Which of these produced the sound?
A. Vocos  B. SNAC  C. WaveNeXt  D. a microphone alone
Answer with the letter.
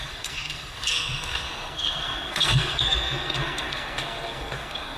B